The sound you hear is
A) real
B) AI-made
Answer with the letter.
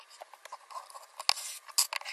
A